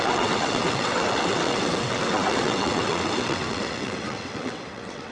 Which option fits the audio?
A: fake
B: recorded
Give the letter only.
A